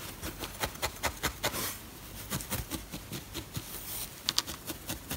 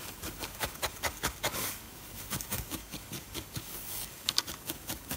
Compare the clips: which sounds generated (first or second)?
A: second